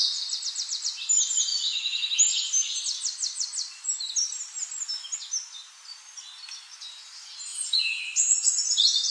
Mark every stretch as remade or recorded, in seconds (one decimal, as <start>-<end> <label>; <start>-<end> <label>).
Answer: 0.0-7.5 recorded; 7.5-8.0 remade; 8.0-9.1 recorded